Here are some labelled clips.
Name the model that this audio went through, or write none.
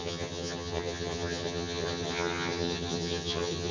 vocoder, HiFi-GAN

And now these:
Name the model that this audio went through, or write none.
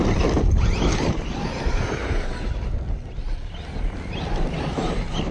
none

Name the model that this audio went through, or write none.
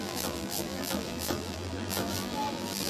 vocoder, BigVGAN v2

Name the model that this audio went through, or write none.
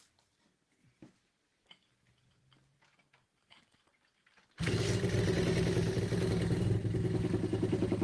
none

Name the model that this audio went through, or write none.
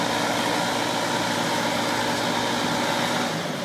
none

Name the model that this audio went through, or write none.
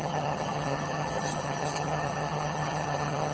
vocoder, HiFi-GAN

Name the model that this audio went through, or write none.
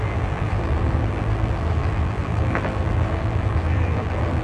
vocoder, BigVGAN v2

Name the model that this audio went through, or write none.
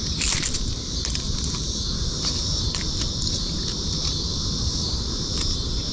vocoder, BigVGAN v2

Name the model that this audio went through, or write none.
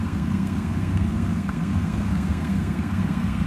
codec, SNAC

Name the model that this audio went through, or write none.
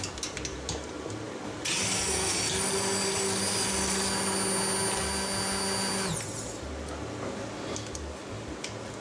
none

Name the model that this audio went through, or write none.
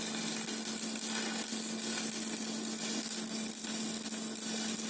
none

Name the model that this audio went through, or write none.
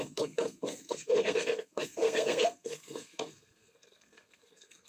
codec, SNAC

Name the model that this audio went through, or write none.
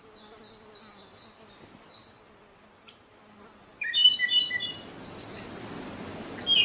none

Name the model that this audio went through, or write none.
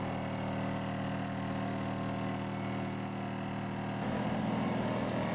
none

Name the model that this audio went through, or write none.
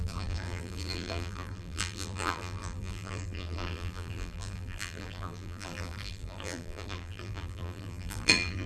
vocoder, BigVGAN v2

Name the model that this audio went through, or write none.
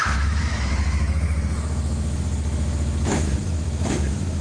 autoencoder, DAC-VAE